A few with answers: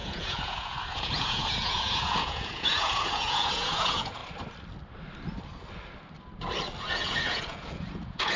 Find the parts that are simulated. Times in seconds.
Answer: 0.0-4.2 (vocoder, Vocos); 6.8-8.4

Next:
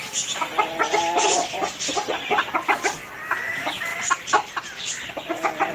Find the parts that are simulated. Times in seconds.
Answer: 3.9-5.7 (vocoder, BigVGAN v2)

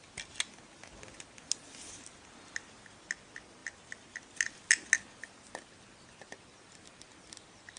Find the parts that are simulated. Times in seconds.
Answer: none